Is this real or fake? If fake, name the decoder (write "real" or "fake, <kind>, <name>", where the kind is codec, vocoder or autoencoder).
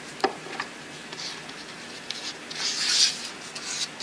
real